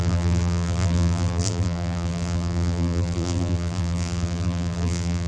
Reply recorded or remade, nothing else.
remade